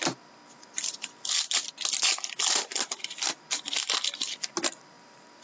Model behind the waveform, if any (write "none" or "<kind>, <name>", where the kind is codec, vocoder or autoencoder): none